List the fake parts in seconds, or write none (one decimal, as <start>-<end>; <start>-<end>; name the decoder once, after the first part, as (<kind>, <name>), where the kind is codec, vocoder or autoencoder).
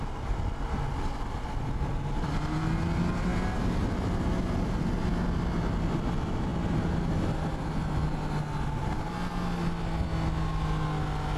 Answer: none